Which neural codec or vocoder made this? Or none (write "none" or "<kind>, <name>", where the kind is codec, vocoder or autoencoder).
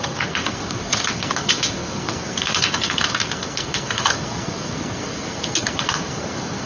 codec, SNAC